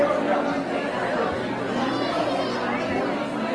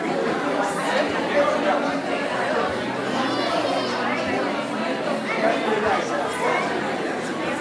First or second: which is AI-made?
second